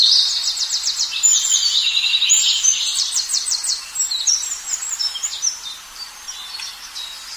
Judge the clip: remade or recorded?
remade